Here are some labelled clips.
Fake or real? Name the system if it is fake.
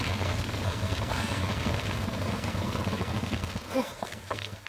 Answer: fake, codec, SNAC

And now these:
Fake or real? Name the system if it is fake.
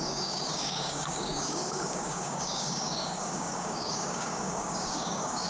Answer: fake, codec, DAC